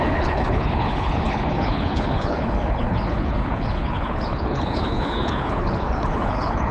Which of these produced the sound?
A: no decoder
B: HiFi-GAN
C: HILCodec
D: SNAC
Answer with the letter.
C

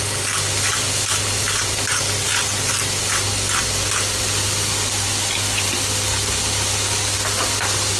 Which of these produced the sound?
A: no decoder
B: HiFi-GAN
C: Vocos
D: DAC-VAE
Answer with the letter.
A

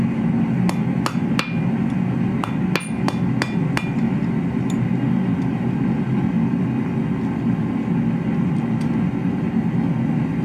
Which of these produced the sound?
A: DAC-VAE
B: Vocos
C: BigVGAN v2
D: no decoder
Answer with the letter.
D